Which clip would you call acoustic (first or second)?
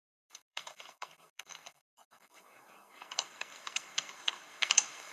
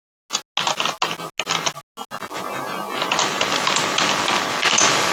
second